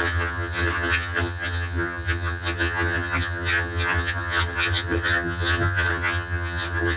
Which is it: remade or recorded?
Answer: remade